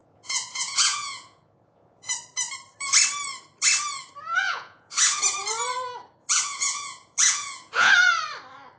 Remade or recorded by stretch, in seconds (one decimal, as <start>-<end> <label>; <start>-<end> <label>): 0.0-2.1 remade; 2.1-4.4 recorded; 4.4-5.2 remade; 5.2-6.2 recorded; 6.2-7.9 remade; 7.9-8.8 recorded